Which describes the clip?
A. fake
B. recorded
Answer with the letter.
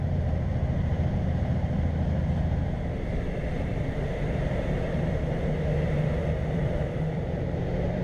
A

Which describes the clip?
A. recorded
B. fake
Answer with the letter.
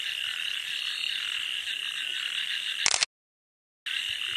A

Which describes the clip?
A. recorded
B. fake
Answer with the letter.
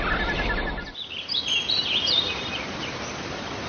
B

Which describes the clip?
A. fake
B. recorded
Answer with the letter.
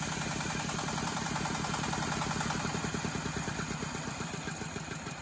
A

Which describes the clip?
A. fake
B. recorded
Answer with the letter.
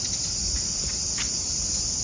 B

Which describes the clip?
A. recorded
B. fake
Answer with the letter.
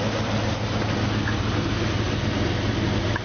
A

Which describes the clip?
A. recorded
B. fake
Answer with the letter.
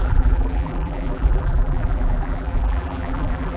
B